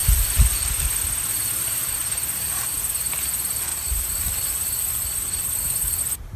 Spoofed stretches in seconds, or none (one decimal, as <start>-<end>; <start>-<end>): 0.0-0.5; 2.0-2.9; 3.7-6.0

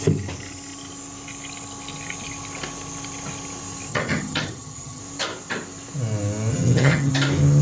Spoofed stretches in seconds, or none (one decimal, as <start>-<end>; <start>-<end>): 3.9-5.0; 6.5-7.1

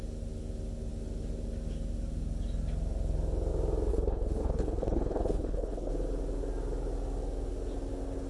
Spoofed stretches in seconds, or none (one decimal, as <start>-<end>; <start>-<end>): 3.9-5.9